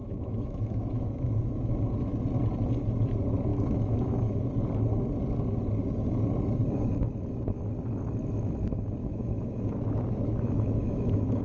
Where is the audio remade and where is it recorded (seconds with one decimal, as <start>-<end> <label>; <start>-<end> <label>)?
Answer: 0.0-1.7 remade; 1.7-3.5 recorded; 3.5-4.5 remade; 4.5-9.0 recorded; 9.0-11.4 remade